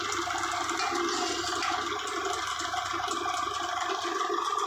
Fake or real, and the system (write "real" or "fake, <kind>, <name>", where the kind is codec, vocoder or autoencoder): real